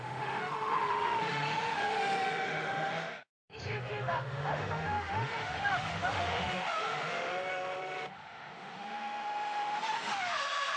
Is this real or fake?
fake